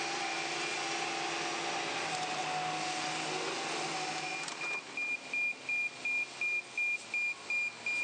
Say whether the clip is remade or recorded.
recorded